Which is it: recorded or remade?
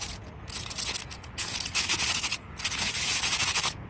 remade